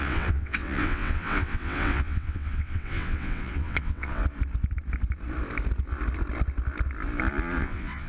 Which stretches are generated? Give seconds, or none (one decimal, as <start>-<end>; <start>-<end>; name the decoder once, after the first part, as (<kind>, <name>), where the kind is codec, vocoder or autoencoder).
0.0-4.2 (vocoder, WaveNeXt); 7.6-8.1